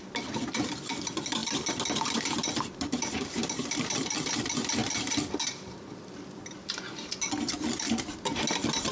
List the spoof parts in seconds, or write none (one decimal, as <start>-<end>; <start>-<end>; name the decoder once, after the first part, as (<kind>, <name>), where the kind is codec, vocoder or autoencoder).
1.4-4.3 (vocoder, BigVGAN v2); 4.8-6.4